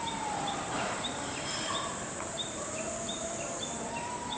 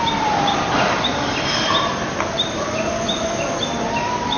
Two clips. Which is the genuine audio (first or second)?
second